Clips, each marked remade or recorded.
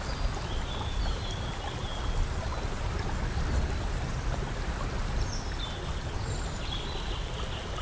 recorded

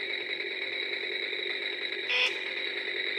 recorded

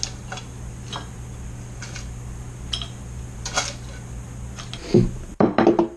recorded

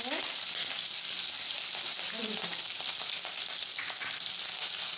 recorded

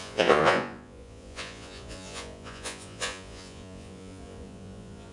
remade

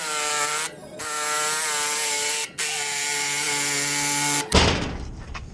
recorded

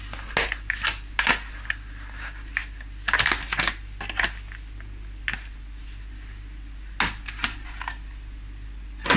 recorded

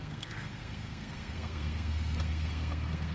remade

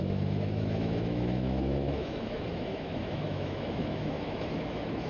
remade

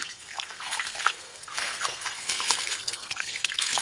remade